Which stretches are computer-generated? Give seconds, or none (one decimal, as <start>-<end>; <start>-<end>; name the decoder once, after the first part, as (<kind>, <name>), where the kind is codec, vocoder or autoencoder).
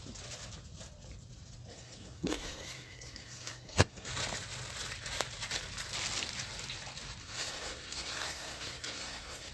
1.7-4.1 (codec, SNAC); 7.2-9.5